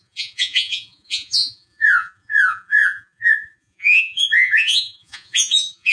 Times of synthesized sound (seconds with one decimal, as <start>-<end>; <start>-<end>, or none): 0.0-5.9